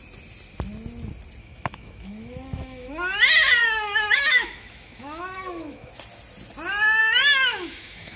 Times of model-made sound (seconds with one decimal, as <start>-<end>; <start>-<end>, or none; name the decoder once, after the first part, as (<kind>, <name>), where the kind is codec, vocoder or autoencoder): 1.4-3.2 (autoencoder, DAC-VAE); 3.6-5.9; 7.0-8.2